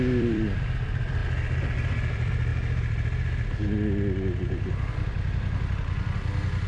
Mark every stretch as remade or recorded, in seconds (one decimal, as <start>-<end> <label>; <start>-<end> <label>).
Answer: 0.0-1.2 remade; 1.2-2.1 recorded; 2.1-2.5 remade; 2.5-6.7 recorded